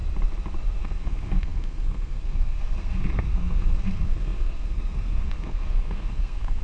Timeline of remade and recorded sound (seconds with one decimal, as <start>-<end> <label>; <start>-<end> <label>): 0.0-0.8 recorded; 0.8-6.6 remade